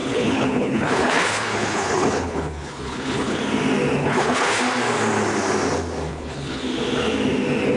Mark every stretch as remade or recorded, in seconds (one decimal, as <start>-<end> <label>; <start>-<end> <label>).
0.0-3.4 remade; 3.4-4.0 recorded; 4.0-4.6 remade; 4.6-6.1 recorded; 6.1-6.6 remade; 6.6-7.8 recorded